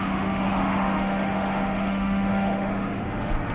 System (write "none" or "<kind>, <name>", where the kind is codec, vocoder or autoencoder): autoencoder, DAC-VAE